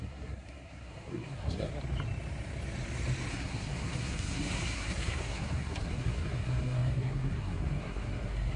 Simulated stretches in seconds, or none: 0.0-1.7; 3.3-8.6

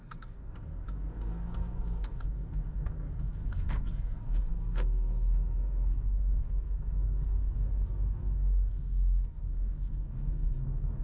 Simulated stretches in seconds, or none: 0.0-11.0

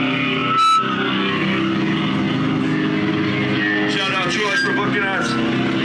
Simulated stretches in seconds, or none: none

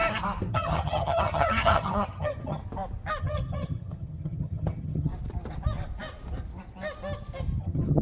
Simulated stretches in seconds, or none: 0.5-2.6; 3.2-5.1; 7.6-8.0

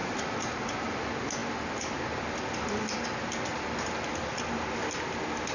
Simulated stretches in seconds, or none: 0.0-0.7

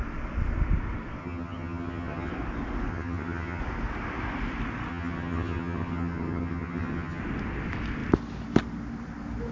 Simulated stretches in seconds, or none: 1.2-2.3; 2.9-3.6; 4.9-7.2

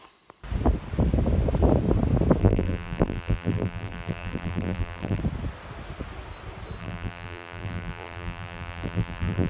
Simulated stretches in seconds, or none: 2.4-5.2; 6.8-9.5